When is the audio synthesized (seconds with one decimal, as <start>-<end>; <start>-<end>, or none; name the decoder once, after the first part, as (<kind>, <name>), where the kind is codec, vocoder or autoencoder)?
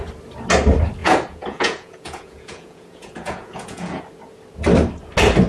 1.0-4.0 (vocoder, Vocos)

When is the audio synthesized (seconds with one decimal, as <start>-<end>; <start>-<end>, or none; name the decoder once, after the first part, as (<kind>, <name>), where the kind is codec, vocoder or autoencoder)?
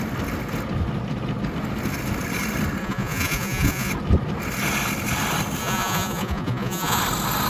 2.8-3.9 (vocoder, Vocos); 5.6-7.0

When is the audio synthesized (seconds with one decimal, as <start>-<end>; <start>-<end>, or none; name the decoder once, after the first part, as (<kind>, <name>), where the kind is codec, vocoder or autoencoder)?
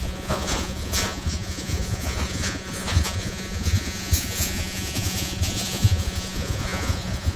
0.0-7.4 (vocoder, Vocos)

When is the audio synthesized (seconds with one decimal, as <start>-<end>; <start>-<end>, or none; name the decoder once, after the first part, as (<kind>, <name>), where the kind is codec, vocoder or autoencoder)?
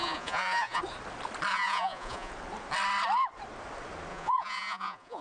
0.0-0.8 (vocoder, Vocos); 1.5-2.3; 4.1-5.2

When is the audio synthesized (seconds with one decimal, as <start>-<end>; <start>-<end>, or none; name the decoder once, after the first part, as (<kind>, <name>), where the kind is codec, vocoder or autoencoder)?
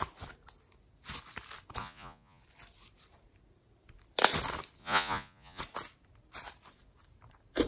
1.8-2.4 (vocoder, Vocos); 4.8-5.6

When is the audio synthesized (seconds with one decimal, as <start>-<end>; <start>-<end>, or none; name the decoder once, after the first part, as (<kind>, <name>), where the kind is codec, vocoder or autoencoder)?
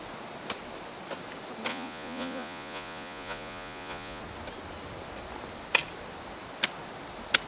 1.7-4.2 (vocoder, Vocos)